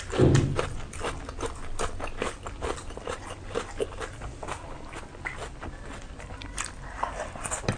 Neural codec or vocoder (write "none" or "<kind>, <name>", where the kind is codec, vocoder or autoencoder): none